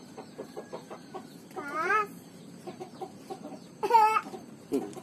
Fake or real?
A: fake